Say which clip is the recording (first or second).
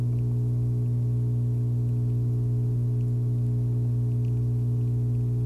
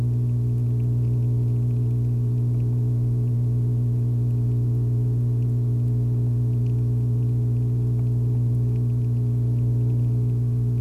first